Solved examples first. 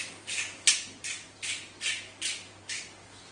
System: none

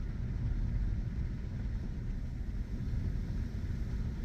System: none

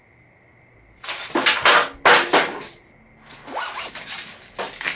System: none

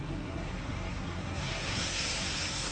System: codec, SNAC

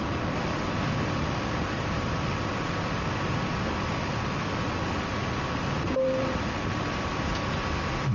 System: none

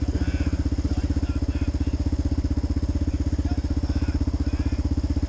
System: none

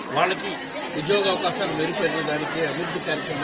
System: none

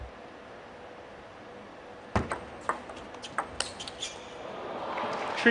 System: none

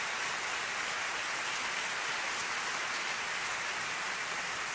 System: none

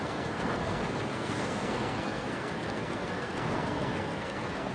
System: codec, SNAC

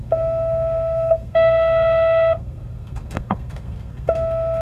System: codec, SNAC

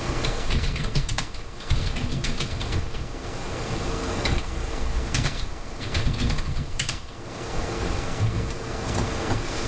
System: codec, SNAC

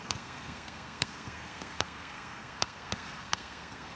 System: codec, SNAC